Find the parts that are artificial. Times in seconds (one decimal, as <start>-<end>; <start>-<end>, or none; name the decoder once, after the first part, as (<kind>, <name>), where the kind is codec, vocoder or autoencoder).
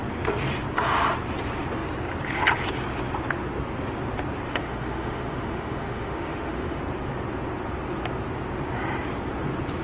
4.5-6.8 (autoencoder, DAC-VAE)